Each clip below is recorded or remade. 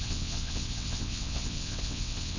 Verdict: remade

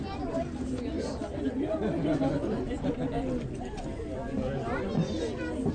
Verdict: recorded